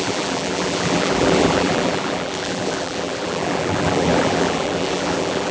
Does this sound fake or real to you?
fake